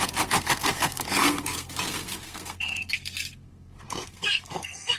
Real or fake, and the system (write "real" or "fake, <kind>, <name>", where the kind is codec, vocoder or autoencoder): fake, codec, SNAC